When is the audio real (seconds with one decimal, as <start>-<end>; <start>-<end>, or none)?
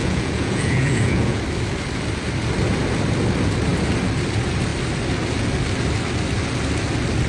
1.4-7.3